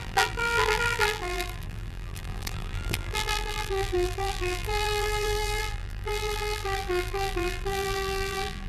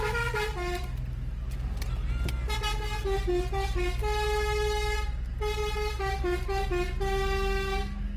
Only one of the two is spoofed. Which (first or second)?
first